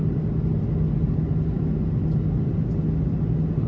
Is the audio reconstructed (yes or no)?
no